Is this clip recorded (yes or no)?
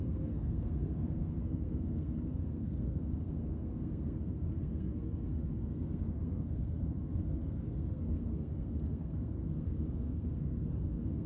no